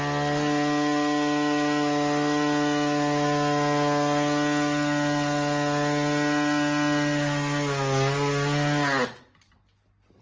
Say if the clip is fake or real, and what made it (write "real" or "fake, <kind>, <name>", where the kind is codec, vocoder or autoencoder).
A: real